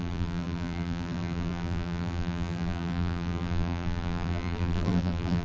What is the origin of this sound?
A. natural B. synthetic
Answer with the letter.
B